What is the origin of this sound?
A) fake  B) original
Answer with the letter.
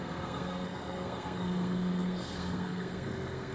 A